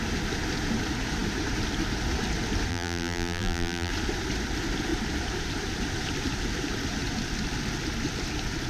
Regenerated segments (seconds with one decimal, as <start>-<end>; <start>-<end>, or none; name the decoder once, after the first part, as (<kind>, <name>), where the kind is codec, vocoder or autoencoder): 2.7-3.9 (vocoder, BigVGAN v2)